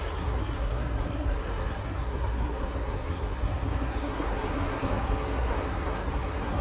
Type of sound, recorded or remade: remade